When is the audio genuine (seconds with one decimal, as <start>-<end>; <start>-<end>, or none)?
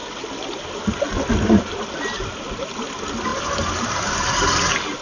0.0-5.0